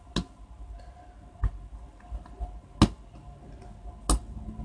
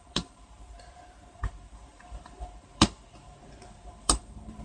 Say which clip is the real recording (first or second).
first